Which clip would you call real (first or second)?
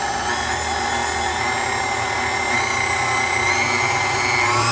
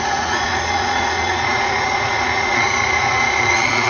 first